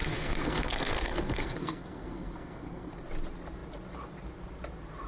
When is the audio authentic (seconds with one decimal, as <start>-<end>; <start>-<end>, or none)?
2.9-5.1